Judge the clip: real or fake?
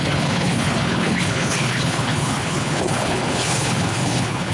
fake